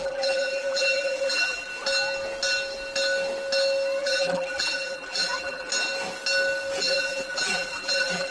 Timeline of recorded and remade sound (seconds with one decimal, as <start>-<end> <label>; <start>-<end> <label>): 0.0-1.7 remade; 1.7-4.0 recorded; 4.0-5.7 remade; 5.7-6.8 recorded; 6.8-8.3 remade